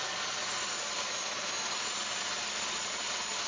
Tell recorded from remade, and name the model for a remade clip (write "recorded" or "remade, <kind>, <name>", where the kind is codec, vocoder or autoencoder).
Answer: recorded